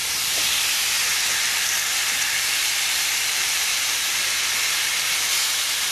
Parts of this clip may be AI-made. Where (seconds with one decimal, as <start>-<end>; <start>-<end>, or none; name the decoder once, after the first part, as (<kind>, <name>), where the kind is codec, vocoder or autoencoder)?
0.0-0.8 (vocoder, BigVGAN v2); 2.6-4.5